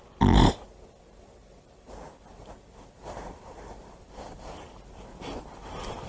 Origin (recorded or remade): recorded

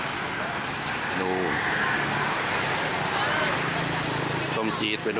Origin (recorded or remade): recorded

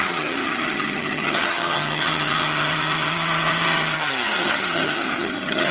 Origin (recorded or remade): remade